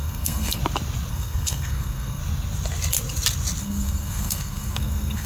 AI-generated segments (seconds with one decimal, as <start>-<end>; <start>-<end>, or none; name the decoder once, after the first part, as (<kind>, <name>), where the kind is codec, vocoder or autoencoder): 0.0-0.6 (codec, SNAC); 1.1-2.2; 3.6-5.3